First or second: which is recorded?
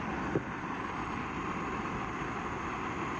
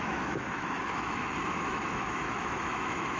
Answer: first